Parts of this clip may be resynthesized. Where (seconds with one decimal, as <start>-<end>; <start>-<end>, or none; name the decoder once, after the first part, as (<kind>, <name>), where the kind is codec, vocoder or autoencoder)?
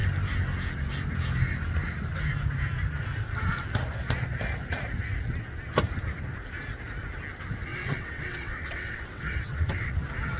7.7-10.0 (vocoder, WaveNeXt)